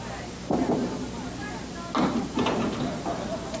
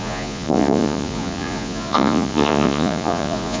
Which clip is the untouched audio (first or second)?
first